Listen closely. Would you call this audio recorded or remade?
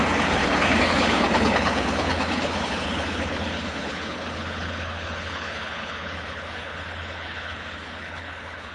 remade